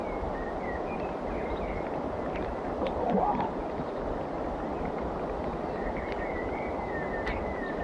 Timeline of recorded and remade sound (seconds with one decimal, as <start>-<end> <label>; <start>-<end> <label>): 0.0-7.8 recorded